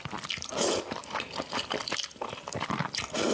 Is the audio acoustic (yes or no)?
yes